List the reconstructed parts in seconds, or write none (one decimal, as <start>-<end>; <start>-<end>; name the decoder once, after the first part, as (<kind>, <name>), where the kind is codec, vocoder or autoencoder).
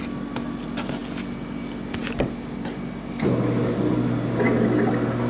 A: none